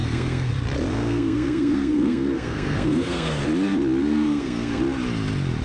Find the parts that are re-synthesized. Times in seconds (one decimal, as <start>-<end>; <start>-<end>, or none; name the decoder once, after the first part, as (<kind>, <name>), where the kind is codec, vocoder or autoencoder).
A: 0.0-0.5 (codec, SNAC); 0.9-3.4; 4.0-4.8